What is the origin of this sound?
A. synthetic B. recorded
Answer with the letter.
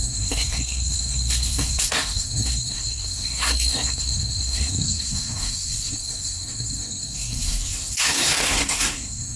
A